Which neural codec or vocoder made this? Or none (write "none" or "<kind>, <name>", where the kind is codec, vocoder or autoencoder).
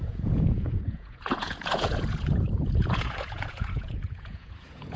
vocoder, Vocos